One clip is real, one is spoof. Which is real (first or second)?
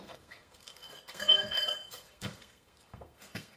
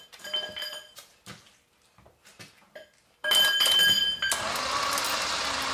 second